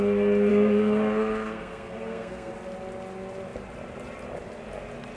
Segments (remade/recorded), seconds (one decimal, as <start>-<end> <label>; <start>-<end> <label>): 0.0-0.5 recorded; 0.5-2.5 remade; 2.5-5.2 recorded